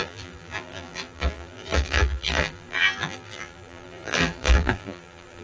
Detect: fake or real fake